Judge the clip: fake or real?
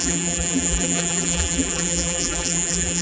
fake